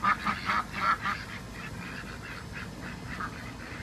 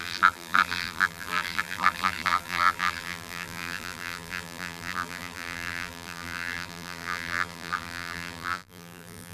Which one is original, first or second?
first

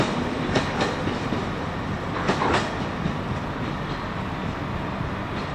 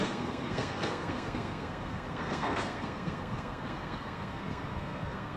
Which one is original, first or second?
first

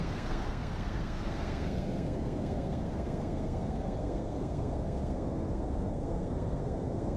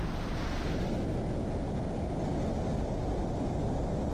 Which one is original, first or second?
second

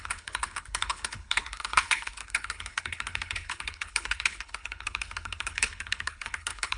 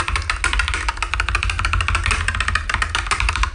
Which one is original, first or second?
second